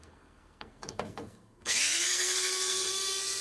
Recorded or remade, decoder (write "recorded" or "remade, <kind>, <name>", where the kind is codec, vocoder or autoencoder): remade, codec, SNAC